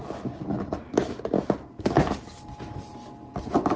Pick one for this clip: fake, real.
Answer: real